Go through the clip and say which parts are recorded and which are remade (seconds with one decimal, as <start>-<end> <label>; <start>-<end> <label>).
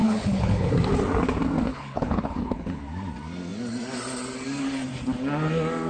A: 0.0-0.7 remade; 0.7-1.7 recorded; 1.7-2.8 remade; 2.8-5.9 recorded